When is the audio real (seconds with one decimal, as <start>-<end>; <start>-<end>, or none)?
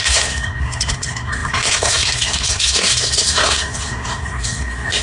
none